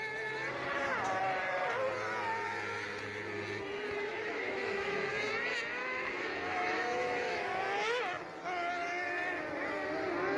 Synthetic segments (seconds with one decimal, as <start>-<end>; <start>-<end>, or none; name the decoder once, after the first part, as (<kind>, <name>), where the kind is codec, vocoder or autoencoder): 4.1-5.1 (autoencoder, DAC-VAE); 5.8-7.6